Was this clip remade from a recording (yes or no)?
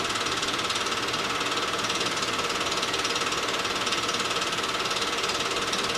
no